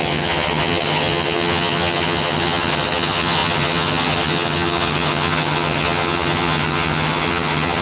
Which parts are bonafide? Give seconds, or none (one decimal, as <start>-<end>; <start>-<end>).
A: none